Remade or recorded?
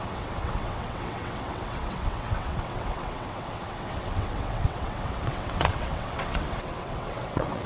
remade